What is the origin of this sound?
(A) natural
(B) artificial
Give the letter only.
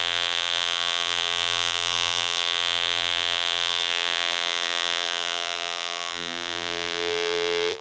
B